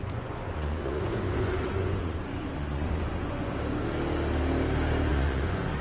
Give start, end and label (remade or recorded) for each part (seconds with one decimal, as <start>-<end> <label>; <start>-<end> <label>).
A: 0.0-3.5 remade; 3.5-5.1 recorded; 5.1-5.8 remade